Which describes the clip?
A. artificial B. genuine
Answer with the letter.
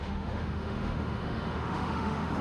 A